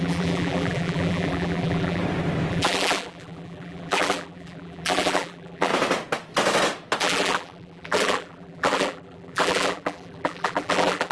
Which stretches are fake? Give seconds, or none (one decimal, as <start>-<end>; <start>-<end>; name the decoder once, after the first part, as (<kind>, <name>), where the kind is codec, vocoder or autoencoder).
0.0-2.0 (vocoder, BigVGAN v2); 2.5-5.7; 7.0-11.1